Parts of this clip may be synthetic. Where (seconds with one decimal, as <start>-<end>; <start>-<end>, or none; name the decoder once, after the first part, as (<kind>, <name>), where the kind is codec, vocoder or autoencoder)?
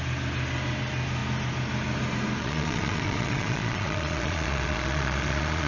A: 2.4-5.7 (vocoder, Vocos)